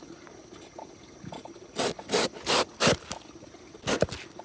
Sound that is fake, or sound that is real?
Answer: real